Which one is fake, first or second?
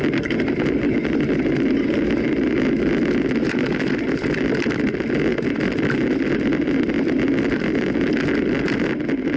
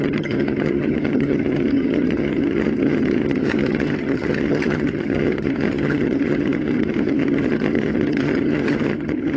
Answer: second